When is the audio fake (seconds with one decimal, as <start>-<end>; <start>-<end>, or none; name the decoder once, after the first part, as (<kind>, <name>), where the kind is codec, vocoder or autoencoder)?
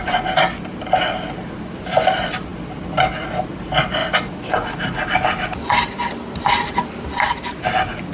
none